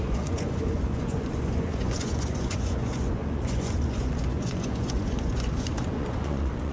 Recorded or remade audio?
remade